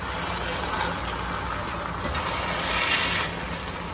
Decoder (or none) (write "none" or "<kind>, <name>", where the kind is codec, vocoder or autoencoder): none